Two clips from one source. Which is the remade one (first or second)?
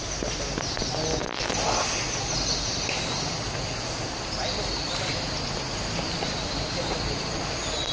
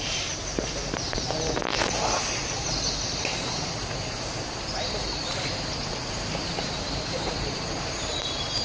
second